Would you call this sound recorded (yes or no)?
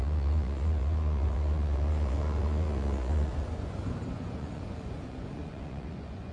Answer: no